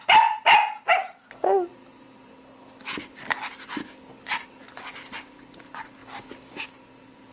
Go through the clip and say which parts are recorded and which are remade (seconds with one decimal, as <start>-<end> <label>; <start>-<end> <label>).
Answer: 0.0-6.0 recorded; 6.0-6.6 remade; 6.6-7.3 recorded